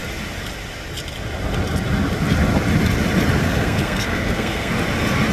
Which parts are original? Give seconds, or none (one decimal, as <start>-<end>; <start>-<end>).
0.0-3.4; 4.7-5.3